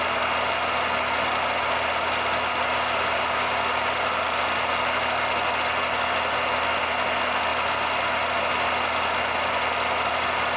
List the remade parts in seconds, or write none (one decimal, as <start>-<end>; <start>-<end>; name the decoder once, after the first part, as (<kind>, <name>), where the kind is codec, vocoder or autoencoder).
none